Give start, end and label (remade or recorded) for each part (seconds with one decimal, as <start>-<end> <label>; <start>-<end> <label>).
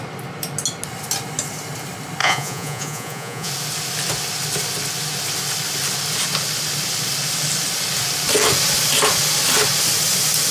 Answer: 0.0-2.2 recorded; 2.2-3.5 remade; 3.5-10.5 recorded